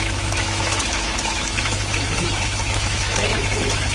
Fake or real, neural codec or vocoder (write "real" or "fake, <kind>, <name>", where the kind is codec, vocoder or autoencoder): fake, autoencoder, DAC-VAE